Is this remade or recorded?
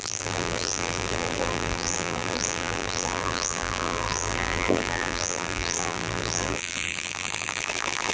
remade